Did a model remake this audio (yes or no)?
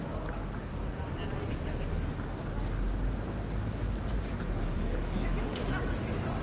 no